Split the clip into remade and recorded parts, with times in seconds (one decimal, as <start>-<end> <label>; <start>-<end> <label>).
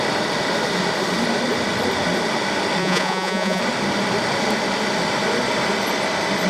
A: 0.0-2.8 recorded; 2.8-3.6 remade; 3.6-6.5 recorded